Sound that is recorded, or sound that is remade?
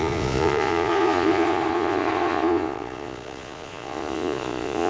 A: remade